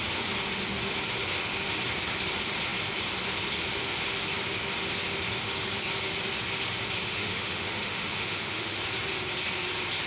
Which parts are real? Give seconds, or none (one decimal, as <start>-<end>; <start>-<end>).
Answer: 0.0-7.0; 8.8-10.1